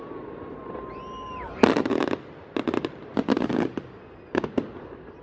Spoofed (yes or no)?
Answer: no